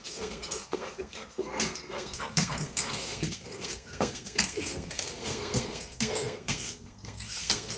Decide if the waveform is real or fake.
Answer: fake